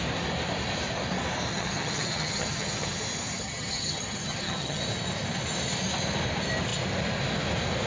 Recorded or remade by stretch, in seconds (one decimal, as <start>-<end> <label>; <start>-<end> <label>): 0.0-1.5 recorded; 1.5-3.0 remade; 3.0-3.4 recorded; 3.4-4.8 remade; 4.8-7.9 recorded